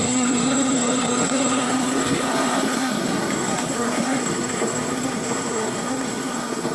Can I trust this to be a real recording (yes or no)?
no